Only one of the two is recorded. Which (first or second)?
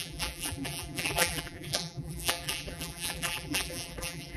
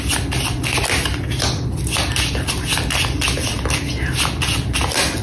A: second